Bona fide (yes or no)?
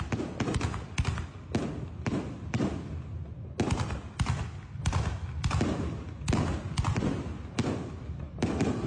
yes